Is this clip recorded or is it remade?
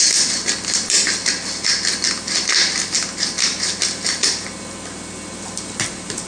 recorded